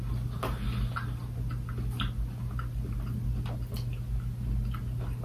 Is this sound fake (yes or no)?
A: no